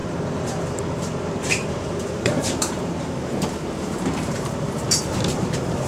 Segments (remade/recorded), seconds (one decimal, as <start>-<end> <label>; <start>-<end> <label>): 0.0-5.9 remade